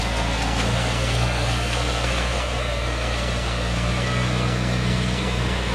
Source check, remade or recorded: remade